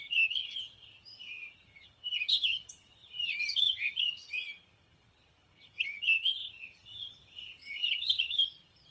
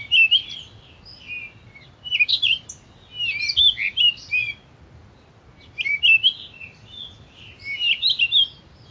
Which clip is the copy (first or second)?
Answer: first